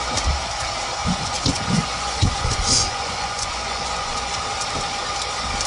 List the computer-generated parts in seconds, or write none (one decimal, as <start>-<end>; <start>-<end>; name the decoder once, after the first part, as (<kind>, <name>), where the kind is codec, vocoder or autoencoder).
1.0-4.4 (vocoder, Vocos)